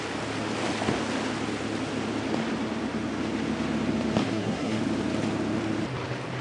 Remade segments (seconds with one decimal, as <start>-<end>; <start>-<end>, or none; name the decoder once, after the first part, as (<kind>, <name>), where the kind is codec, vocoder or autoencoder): 4.2-4.8 (codec, SNAC)